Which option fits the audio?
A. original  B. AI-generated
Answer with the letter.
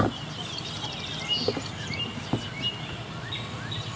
A